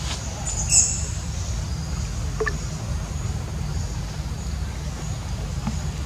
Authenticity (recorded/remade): recorded